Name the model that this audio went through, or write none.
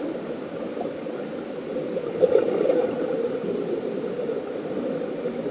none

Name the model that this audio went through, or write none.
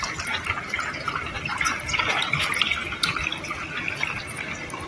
none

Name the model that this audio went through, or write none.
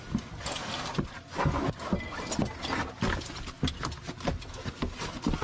none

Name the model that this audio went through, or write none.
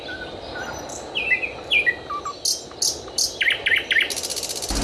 none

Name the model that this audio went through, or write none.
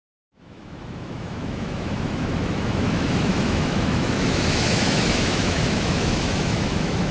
autoencoder, DAC-VAE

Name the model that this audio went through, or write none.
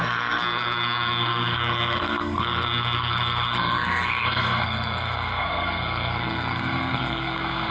codec, SNAC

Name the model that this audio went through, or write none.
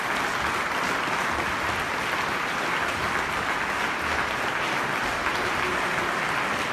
none